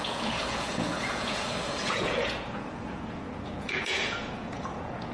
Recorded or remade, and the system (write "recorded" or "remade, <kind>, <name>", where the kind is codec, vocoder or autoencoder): remade, vocoder, Vocos